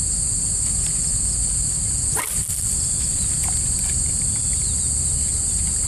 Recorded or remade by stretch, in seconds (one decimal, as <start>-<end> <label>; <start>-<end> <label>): 0.0-5.9 recorded